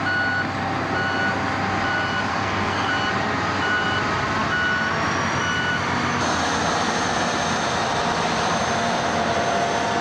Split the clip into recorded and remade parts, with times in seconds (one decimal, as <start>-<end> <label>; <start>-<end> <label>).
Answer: 0.0-2.3 recorded; 2.3-2.9 remade; 2.9-10.0 recorded